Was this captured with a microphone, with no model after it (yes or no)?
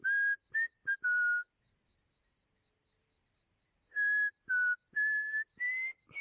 yes